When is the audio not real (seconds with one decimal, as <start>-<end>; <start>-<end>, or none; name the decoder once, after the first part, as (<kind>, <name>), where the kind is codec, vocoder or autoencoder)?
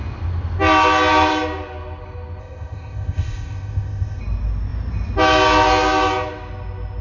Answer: 2.4-4.2 (codec, ZipCodec)